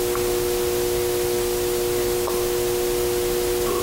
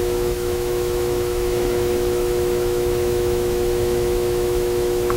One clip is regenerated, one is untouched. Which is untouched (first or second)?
first